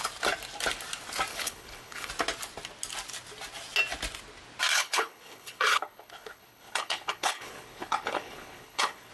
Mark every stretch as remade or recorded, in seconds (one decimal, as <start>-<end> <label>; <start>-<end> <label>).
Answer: 0.0-1.3 recorded; 1.3-2.1 remade; 2.1-4.7 recorded; 4.7-9.1 remade